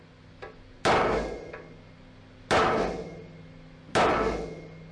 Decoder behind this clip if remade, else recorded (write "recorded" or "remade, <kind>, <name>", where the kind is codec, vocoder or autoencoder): recorded